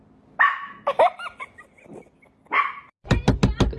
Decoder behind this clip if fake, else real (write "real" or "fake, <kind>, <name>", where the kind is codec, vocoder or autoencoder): real